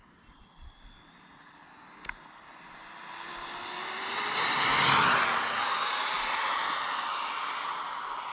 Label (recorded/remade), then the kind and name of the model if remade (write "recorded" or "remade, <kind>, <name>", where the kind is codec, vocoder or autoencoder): recorded